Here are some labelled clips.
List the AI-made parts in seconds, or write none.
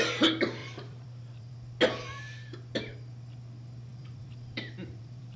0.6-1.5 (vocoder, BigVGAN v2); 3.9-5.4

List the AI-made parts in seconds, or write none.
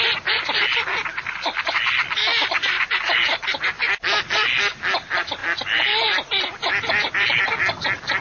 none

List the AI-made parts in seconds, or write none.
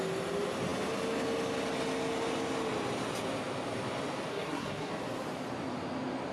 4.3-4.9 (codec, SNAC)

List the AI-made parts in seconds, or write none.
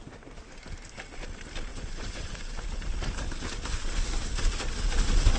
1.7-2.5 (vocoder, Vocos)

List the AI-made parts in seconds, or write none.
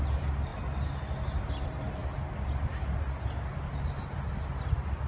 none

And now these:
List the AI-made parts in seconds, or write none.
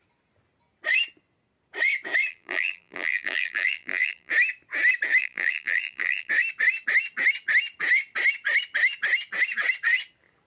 2.3-4.3 (vocoder, BigVGAN v2); 5.2-6.3